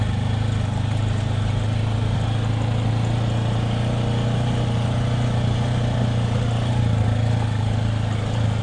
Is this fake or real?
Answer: real